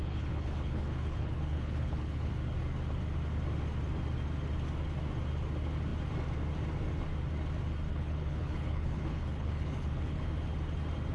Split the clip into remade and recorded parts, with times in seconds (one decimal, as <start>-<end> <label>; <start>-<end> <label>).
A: 0.0-2.3 remade; 2.3-7.9 recorded; 7.9-10.2 remade; 10.2-11.1 recorded